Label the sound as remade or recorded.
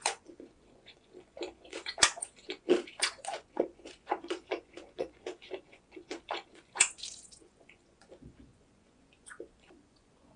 remade